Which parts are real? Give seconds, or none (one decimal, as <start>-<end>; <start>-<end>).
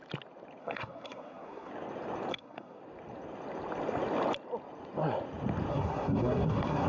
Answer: 0.0-0.6; 1.7-2.3; 2.8-5.7